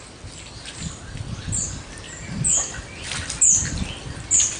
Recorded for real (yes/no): yes